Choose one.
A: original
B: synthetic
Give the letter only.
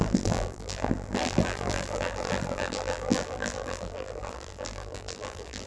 B